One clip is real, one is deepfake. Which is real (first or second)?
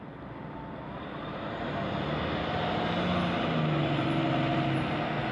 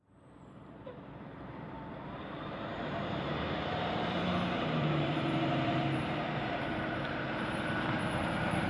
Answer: first